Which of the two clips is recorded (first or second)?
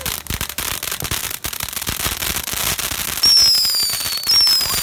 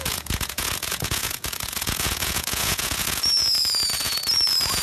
first